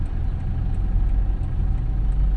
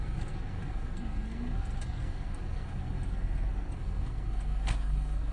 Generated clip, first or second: second